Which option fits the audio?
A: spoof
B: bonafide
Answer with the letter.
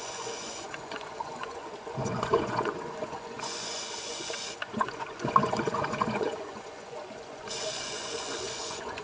A